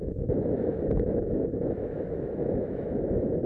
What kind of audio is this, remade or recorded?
remade